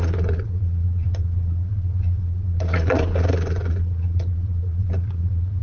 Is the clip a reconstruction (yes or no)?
yes